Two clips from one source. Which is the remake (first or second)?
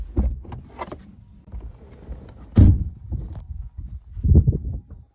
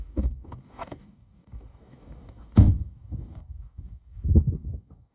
second